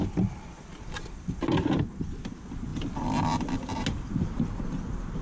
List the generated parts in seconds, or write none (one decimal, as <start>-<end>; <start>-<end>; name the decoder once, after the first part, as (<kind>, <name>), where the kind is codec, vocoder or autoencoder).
none